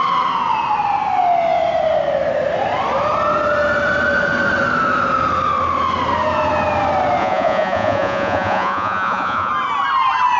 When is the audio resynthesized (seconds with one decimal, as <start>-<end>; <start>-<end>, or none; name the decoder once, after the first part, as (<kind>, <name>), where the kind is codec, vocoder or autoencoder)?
7.2-9.5 (vocoder, Vocos)